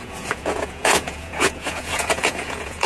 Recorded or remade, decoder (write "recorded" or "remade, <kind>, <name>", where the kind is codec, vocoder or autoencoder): remade, vocoder, Vocos